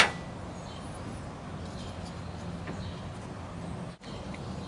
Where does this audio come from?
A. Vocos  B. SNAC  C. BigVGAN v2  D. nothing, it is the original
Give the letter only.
D